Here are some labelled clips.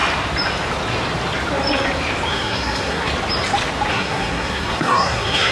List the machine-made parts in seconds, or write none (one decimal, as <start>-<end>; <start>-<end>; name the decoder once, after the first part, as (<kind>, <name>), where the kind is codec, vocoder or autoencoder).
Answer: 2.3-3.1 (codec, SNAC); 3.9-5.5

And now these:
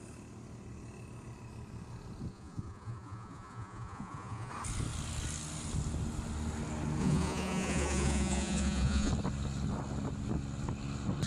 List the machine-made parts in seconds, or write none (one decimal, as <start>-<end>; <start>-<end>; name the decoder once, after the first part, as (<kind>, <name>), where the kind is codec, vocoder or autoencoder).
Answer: 2.3-4.5 (vocoder, Vocos); 7.0-9.1

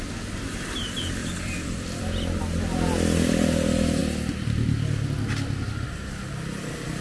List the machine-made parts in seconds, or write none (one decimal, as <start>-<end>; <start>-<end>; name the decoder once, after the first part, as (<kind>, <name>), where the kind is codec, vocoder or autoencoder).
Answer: 1.2-2.4 (vocoder, BigVGAN v2)